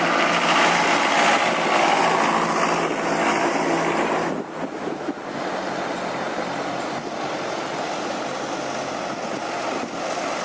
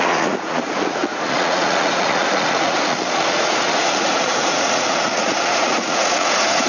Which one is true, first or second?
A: first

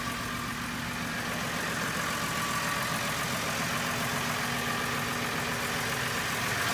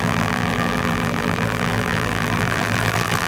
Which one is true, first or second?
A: first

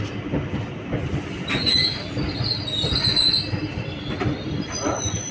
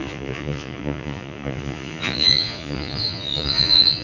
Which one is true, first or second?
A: first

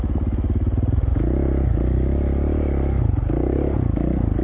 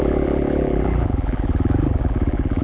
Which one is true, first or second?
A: first